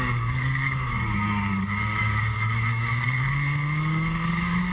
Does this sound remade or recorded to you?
remade